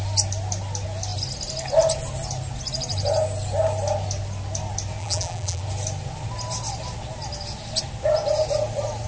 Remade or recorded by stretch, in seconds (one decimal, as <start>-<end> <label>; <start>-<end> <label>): 0.0-5.0 recorded; 5.0-5.6 remade; 5.6-9.1 recorded